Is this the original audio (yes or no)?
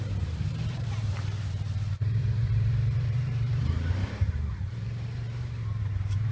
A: no